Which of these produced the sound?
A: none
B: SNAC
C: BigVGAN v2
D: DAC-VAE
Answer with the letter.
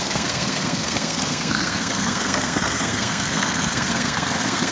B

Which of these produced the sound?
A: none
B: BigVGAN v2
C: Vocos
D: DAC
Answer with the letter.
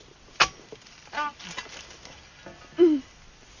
A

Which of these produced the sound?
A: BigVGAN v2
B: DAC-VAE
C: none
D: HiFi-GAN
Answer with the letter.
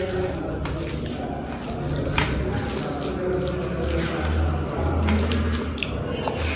C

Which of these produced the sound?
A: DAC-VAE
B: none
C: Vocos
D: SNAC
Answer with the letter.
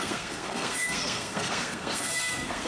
D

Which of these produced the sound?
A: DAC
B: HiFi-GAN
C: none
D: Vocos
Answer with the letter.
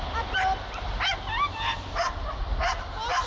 C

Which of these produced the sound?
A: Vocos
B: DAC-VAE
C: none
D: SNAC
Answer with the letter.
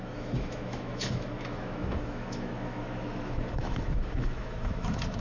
B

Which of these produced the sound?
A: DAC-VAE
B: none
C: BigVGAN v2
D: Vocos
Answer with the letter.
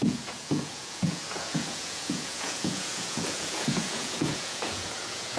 D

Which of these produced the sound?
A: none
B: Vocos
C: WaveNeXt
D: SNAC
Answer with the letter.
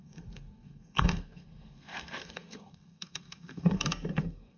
D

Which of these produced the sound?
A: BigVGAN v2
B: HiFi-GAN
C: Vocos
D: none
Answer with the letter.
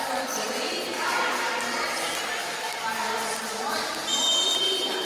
A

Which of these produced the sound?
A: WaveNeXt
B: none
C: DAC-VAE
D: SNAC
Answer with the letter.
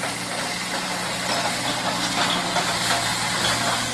B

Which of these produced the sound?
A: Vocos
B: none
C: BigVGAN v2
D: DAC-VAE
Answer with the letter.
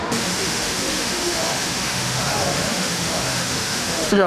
D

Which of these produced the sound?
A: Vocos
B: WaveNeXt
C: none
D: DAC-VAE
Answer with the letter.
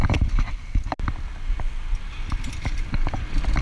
C